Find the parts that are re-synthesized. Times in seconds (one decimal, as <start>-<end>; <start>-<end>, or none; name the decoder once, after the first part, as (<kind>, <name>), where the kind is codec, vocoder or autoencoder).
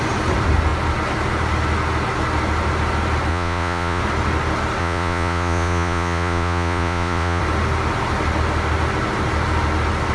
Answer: 3.3-4.0 (vocoder, Vocos); 4.8-7.4